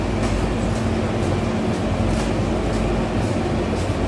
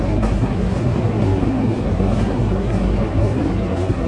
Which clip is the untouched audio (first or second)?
first